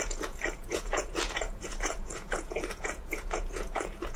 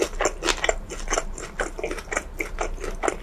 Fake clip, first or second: first